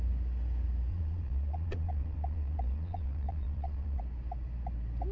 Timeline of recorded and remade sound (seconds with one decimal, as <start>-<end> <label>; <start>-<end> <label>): 0.0-0.9 recorded; 0.9-4.0 remade; 4.0-5.1 recorded